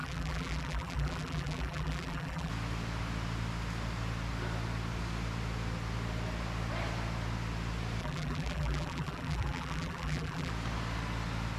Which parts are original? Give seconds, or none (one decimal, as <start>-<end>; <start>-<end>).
2.5-8.0; 10.5-11.6